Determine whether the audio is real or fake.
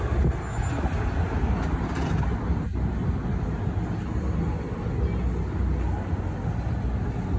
real